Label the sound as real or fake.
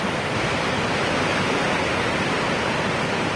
fake